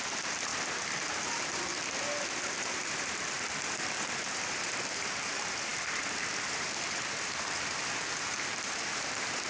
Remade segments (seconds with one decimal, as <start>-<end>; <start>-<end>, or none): 0.0-0.5; 1.0-1.7; 2.2-9.5